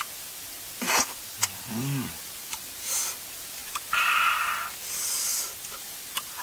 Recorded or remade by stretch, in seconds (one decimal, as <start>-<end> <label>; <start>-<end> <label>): 0.0-6.4 recorded